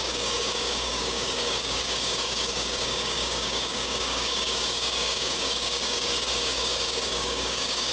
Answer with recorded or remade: remade